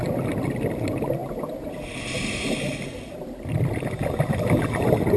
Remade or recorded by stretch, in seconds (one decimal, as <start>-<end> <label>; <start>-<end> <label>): 0.0-5.2 recorded